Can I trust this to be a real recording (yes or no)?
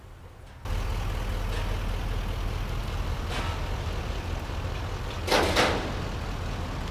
yes